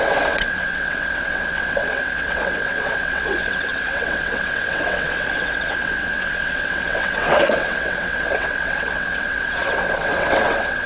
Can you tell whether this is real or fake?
fake